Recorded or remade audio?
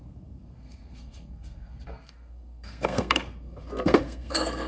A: remade